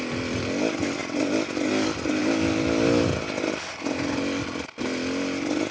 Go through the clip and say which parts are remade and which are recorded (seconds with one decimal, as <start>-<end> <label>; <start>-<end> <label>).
0.0-5.7 recorded